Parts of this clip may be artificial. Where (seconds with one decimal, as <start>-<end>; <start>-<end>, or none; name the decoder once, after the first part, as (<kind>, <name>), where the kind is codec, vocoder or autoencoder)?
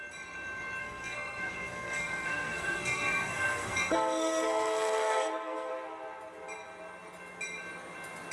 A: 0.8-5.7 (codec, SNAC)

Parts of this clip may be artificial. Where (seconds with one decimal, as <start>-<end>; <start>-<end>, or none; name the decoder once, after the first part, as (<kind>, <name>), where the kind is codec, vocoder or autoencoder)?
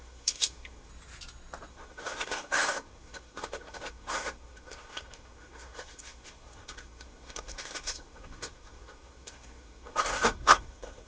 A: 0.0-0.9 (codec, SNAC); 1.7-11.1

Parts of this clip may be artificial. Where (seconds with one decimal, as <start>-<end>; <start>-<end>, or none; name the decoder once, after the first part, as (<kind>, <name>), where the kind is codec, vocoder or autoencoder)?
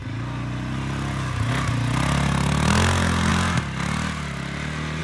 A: none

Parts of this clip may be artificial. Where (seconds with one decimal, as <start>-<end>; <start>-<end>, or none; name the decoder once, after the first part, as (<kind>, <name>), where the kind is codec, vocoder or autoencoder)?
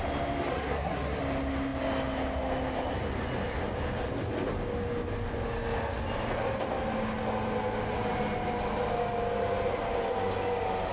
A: 0.5-1.2 (codec, SNAC)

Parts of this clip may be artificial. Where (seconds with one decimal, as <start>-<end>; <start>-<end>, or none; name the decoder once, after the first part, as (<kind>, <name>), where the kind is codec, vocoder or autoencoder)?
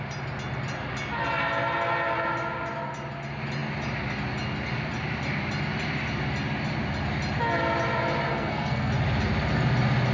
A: 8.3-8.9 (codec, SNAC)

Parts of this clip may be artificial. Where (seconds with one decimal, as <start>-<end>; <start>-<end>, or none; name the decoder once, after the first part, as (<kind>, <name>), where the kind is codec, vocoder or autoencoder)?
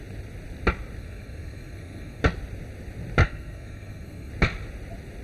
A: 1.0-2.2 (codec, SNAC); 3.2-4.3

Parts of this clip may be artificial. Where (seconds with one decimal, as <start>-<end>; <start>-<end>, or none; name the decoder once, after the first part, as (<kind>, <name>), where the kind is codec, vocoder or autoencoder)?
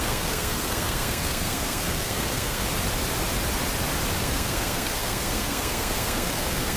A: 0.0-2.6 (codec, SNAC); 4.2-6.8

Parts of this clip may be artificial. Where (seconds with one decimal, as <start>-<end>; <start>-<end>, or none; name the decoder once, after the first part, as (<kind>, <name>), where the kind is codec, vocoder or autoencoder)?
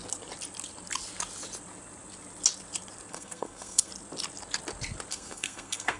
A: 3.1-3.9 (codec, SNAC); 5.1-6.0